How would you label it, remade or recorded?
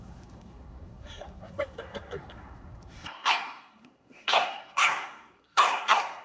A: remade